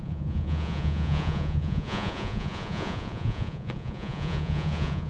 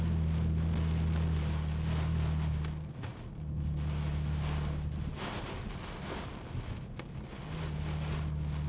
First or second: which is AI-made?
first